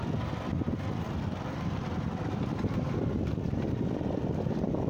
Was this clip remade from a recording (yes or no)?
no